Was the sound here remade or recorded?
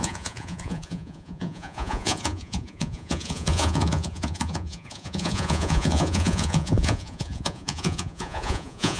remade